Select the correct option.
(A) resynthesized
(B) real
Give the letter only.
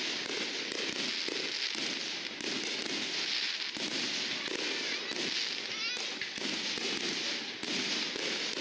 B